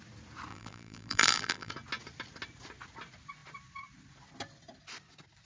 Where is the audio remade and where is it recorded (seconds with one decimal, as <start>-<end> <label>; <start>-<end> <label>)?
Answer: 0.0-0.5 recorded; 0.5-1.7 remade; 1.7-5.5 recorded